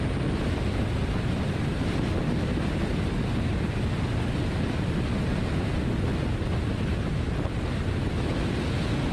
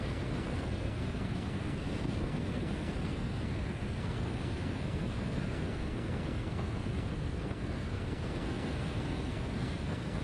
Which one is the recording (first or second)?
first